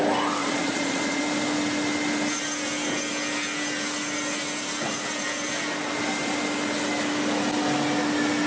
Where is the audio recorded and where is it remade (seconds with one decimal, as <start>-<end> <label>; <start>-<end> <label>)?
0.0-0.4 recorded; 0.4-1.2 remade; 1.2-8.5 recorded